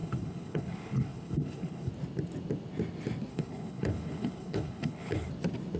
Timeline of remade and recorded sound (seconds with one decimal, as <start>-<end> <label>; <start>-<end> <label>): 0.0-1.9 remade; 1.9-3.3 recorded; 3.3-5.3 remade; 5.3-5.8 recorded

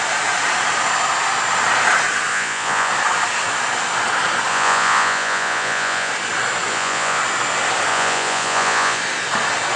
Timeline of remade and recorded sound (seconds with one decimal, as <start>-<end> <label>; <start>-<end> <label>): 0.0-2.3 recorded; 2.3-2.9 remade; 2.9-4.5 recorded; 4.5-6.1 remade; 6.1-6.7 recorded; 6.7-7.2 remade; 7.2-7.9 recorded; 7.9-9.0 remade; 9.0-9.8 recorded

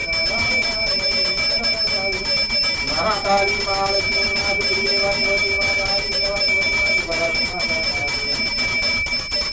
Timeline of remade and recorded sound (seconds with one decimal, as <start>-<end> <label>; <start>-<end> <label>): 0.0-9.5 recorded

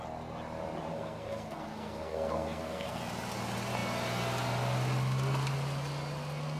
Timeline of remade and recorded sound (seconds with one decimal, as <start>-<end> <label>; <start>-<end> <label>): 0.0-0.9 recorded; 0.9-3.0 remade; 3.0-6.6 recorded

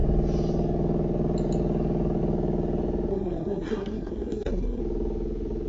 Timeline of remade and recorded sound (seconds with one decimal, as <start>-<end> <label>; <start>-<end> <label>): 0.0-3.1 recorded; 3.1-4.8 remade; 4.8-5.7 recorded

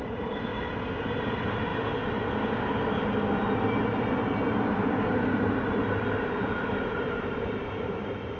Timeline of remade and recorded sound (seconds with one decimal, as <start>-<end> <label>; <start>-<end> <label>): 0.0-0.5 remade; 0.5-1.2 recorded; 1.2-1.7 remade; 1.7-6.5 recorded; 6.5-8.4 remade